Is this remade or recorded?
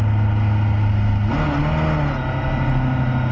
recorded